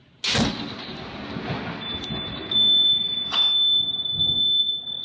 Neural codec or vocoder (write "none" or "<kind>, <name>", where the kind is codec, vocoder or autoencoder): none